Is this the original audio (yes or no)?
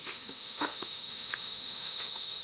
no